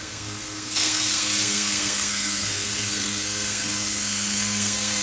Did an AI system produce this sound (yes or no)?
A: yes